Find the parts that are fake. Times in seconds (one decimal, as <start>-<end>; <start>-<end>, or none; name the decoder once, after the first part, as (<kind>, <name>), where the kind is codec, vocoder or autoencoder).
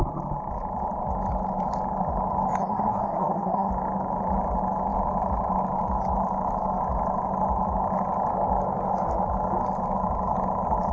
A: 2.6-3.7 (codec, SNAC)